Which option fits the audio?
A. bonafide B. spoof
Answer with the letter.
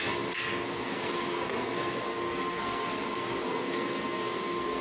B